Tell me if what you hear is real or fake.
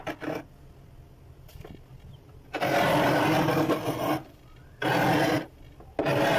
real